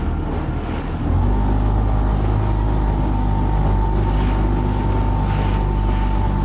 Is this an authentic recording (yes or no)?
yes